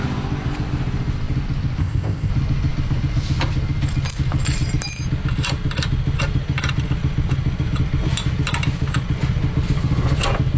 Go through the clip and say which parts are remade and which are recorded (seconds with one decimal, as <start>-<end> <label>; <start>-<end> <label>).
0.0-1.8 recorded; 1.8-2.3 remade; 2.3-10.6 recorded